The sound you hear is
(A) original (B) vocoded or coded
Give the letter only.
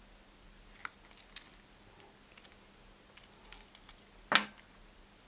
A